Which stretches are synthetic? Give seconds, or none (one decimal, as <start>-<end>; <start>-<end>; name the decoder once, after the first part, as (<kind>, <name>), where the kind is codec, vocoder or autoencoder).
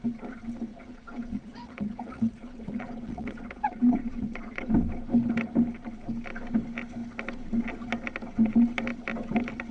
0.7-4.7 (vocoder, Vocos)